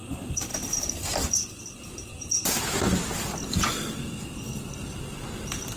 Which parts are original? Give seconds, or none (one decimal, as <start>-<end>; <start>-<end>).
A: 0.0-5.8